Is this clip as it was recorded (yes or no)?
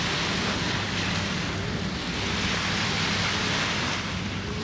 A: yes